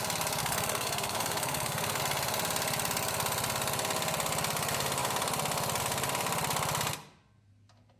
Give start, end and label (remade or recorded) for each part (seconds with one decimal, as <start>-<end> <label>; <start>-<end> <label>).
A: 0.0-0.4 recorded; 0.4-2.0 remade; 2.0-8.0 recorded